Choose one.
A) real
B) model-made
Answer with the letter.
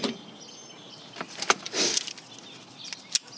A